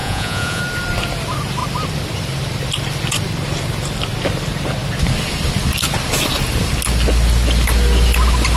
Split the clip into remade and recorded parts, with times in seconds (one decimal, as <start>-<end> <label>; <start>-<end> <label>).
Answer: 0.0-0.6 remade; 0.6-8.6 recorded